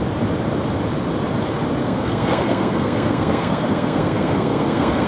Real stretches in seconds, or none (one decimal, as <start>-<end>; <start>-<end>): 0.0-1.8